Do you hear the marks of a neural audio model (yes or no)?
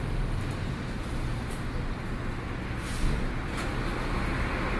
no